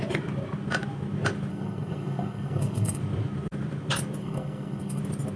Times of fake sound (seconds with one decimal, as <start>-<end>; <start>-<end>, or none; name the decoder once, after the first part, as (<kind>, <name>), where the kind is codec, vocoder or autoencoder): 1.5-3.0 (codec, SNAC); 4.2-5.0